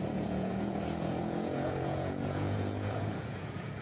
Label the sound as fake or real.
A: fake